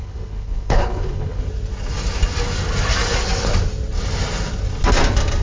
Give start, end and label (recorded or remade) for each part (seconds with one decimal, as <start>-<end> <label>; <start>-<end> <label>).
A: 0.0-1.4 remade; 1.4-5.4 recorded